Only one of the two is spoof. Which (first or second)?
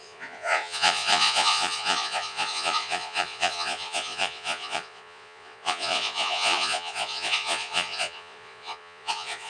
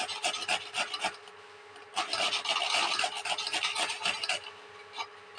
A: first